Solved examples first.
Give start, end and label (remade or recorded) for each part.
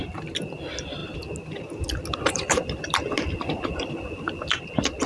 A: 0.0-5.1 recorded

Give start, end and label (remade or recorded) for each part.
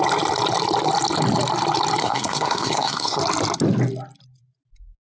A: 0.0-2.0 recorded; 2.0-3.2 remade; 3.2-5.2 recorded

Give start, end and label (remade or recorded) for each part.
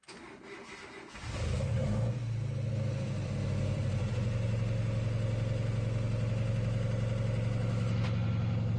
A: 0.0-3.2 recorded; 3.2-4.1 remade; 4.1-8.8 recorded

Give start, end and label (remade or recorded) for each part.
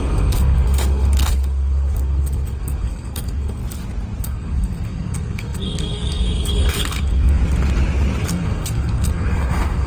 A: 0.0-3.6 remade; 3.6-4.2 recorded; 4.2-7.4 remade; 7.4-8.3 recorded; 8.3-9.9 remade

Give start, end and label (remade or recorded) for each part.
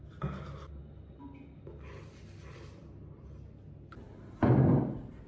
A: 0.0-5.3 recorded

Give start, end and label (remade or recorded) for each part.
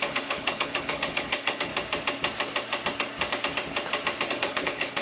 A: 0.0-1.7 remade; 1.7-4.3 recorded; 4.3-5.0 remade